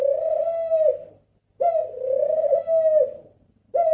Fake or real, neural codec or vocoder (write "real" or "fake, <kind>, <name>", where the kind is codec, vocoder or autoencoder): fake, vocoder, BigVGAN v2